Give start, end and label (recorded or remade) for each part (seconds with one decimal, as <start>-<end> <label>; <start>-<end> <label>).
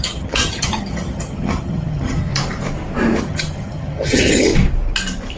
0.0-2.3 remade; 2.3-3.2 recorded; 3.2-4.5 remade; 4.5-5.4 recorded